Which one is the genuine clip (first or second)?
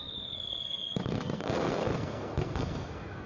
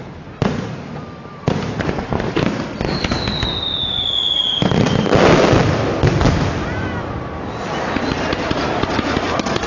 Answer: second